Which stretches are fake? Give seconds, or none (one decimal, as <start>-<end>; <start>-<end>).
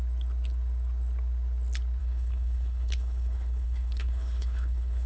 2.0-5.1